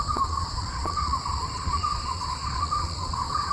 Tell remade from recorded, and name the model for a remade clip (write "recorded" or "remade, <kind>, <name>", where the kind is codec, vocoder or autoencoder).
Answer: remade, vocoder, Vocos